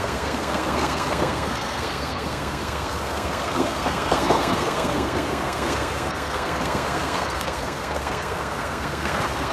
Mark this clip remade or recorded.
remade